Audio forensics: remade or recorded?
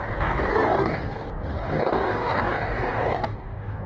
remade